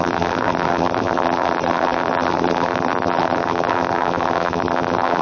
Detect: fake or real fake